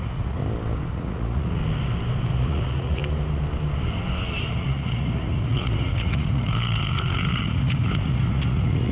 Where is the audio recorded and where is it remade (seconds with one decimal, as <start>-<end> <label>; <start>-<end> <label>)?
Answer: 0.0-0.4 remade; 0.4-0.9 recorded; 0.9-1.6 remade; 1.6-2.3 recorded; 2.3-3.0 remade; 3.0-4.5 recorded; 4.5-8.9 remade